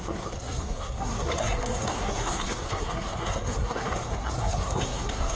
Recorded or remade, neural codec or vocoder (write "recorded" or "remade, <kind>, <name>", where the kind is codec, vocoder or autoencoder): remade, codec, SNAC